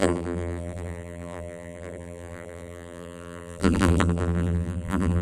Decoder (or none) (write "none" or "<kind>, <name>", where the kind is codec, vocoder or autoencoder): vocoder, BigVGAN v2